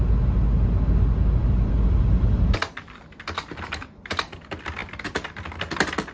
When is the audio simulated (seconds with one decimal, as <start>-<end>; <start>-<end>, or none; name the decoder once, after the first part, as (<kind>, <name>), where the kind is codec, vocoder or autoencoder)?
1.4-4.1 (vocoder, BigVGAN v2); 4.8-5.6